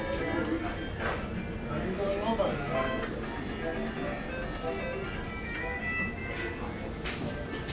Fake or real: real